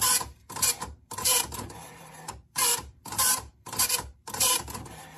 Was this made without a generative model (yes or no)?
no